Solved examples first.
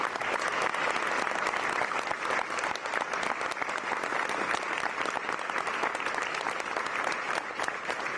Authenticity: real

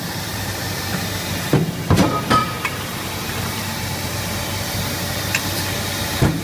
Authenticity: fake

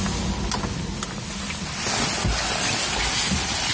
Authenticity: real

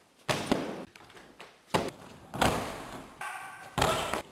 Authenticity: fake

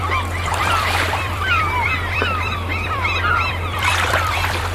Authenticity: fake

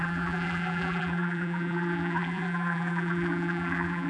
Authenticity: fake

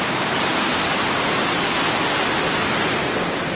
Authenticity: real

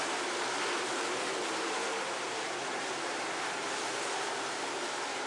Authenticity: fake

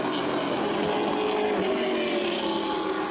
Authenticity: real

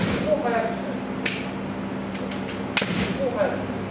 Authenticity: real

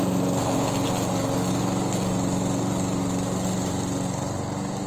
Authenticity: real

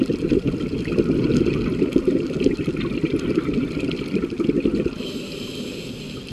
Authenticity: real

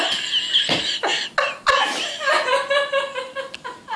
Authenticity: real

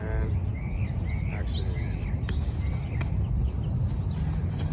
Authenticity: real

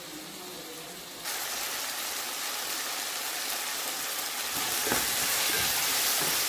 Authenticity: real